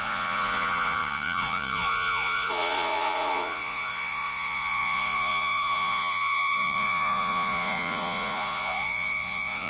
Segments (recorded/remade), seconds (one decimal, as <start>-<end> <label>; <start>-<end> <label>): 0.0-9.7 remade